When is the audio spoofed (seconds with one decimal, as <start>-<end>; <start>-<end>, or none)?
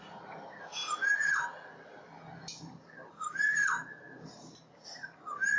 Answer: none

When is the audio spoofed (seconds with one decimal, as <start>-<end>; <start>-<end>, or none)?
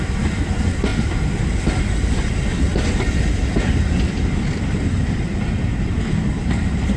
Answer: 0.9-1.4; 2.7-7.0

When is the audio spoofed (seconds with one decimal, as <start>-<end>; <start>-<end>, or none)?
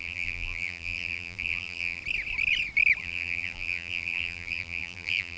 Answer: 0.0-2.0; 3.0-5.4